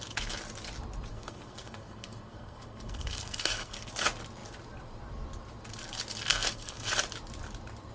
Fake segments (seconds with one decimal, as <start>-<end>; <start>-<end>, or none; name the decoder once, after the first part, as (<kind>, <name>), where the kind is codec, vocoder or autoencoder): 1.1-3.9 (codec, SNAC); 6.3-6.9